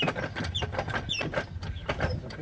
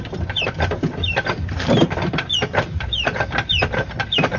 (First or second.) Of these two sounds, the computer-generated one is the second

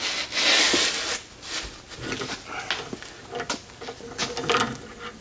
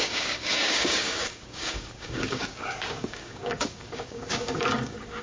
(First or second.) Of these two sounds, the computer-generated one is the second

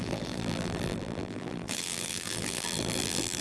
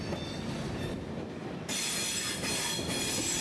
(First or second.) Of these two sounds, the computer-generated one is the first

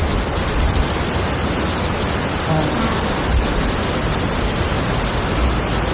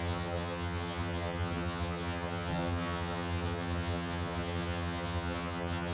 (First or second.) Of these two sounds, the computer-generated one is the second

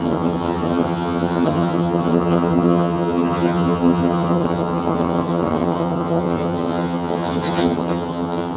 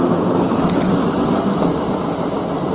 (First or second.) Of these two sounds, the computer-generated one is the first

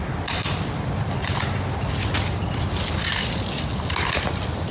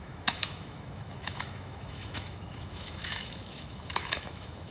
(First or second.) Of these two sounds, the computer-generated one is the second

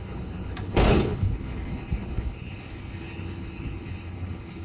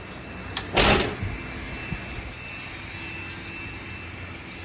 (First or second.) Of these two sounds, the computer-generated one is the first